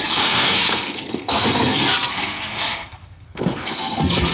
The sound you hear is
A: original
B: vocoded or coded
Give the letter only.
B